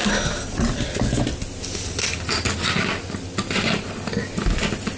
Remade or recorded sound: recorded